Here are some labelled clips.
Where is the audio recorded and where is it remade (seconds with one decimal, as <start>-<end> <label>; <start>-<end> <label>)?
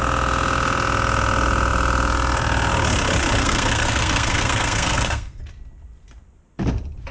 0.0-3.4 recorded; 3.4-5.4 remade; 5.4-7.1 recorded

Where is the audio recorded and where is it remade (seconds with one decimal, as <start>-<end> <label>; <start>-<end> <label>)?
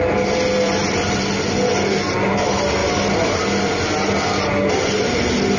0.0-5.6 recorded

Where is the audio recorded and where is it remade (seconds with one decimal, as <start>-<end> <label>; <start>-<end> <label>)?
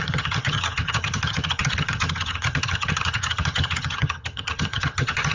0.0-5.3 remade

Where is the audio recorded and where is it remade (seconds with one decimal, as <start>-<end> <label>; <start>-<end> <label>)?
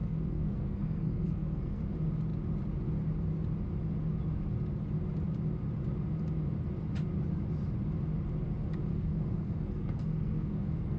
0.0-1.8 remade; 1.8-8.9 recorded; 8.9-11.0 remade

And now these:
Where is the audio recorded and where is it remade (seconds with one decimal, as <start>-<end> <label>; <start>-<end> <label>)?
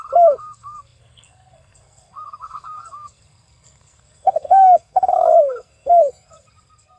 0.0-7.0 remade